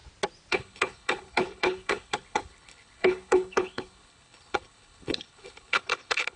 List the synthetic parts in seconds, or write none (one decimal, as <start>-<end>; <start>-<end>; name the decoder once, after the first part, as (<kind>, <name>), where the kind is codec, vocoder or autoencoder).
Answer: 0.5-6.4 (codec, HILCodec)